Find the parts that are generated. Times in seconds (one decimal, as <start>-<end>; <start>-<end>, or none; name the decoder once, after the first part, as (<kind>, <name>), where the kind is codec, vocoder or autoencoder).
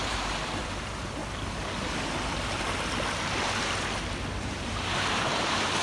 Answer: 0.0-1.2 (vocoder, BigVGAN v2); 4.4-5.8